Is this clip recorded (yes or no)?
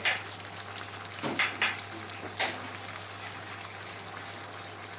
yes